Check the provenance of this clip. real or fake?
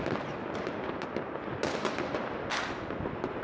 real